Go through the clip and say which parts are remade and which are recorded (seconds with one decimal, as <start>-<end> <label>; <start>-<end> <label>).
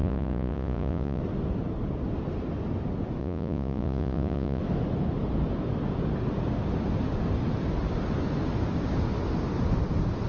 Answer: 0.0-1.2 remade; 1.2-3.2 recorded; 3.2-4.6 remade; 4.6-10.3 recorded